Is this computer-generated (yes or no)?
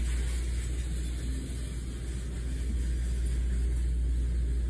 no